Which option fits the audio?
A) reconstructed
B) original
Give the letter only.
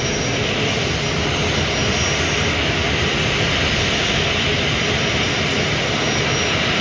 B